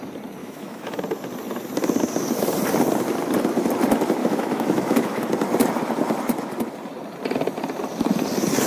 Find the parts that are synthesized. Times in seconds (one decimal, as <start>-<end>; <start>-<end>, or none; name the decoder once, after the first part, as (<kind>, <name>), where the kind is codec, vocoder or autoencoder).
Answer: 0.4-1.0 (autoencoder, DAC-VAE); 4.2-5.2